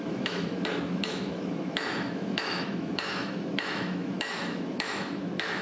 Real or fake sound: fake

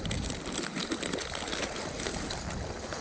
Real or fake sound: real